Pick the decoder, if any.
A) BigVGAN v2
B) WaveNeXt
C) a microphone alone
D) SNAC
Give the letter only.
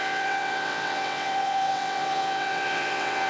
B